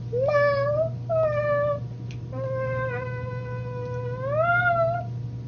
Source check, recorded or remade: recorded